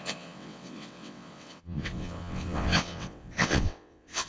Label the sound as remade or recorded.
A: remade